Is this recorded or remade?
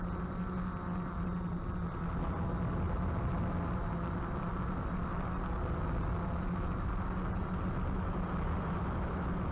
recorded